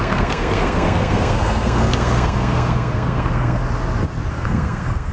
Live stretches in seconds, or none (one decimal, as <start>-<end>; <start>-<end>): 3.6-4.3